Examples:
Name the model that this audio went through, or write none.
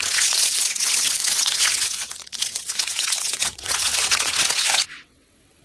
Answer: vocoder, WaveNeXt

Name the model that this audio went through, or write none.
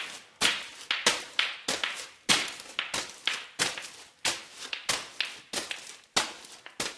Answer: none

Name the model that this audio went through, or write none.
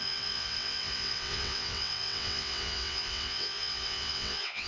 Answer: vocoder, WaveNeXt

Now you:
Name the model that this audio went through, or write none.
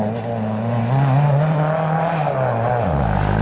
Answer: none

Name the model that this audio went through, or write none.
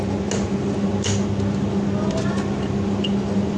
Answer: none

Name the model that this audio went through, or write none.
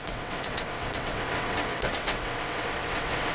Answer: vocoder, WaveNeXt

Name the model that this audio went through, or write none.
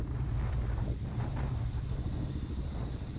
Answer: none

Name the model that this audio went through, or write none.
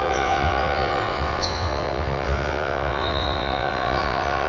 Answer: vocoder, WaveNeXt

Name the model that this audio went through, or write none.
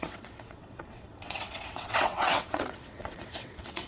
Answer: vocoder, WaveNeXt